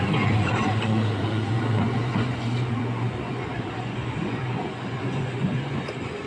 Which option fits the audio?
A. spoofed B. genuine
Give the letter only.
A